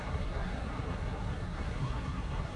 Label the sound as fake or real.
fake